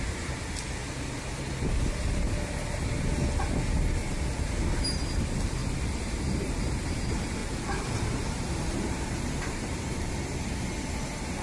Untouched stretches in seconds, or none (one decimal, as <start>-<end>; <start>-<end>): 0.0-5.6; 6.2-7.4; 10.1-11.4